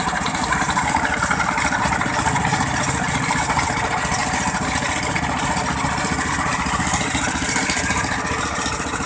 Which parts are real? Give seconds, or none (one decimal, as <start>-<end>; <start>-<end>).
0.0-9.1